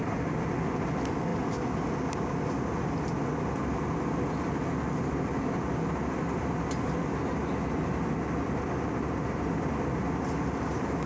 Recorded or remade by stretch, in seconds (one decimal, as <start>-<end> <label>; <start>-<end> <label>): 0.0-11.1 recorded

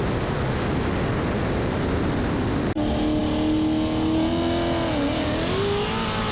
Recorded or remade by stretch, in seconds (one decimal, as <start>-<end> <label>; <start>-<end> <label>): 0.0-6.3 recorded